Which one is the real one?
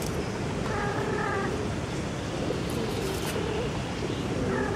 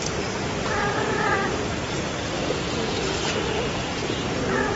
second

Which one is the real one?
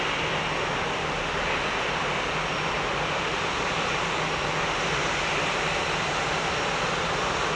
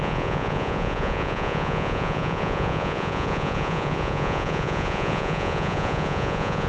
first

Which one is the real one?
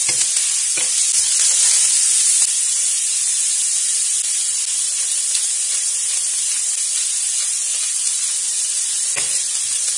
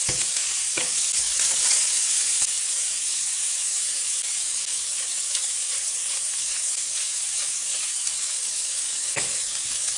first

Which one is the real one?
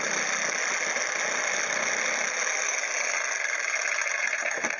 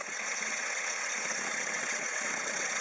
first